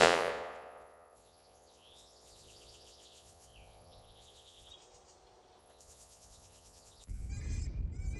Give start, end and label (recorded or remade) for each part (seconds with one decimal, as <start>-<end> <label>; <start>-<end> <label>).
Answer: 0.0-4.7 remade; 4.7-5.6 recorded; 5.6-7.3 remade; 7.3-8.2 recorded